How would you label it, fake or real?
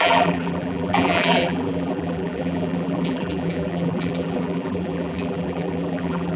fake